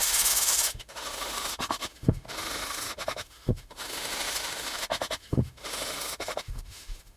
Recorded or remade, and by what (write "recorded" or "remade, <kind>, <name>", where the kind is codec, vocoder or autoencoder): remade, autoencoder, DAC-VAE